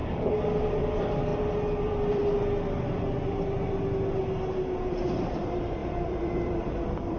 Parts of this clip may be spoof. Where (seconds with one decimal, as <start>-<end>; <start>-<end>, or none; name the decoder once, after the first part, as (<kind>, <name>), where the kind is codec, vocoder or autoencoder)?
0.7-1.3 (vocoder, BigVGAN v2); 1.8-2.2; 5.0-7.2